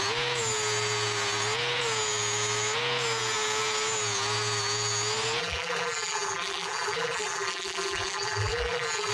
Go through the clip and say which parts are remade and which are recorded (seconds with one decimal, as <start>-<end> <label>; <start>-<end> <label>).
0.0-5.4 recorded; 5.4-9.1 remade